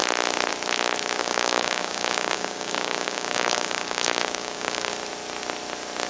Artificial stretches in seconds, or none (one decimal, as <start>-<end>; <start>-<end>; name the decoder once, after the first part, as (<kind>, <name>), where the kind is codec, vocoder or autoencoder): 1.2-4.9 (codec, DAC)